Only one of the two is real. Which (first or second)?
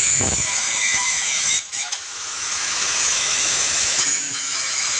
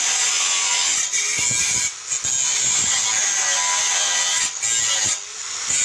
second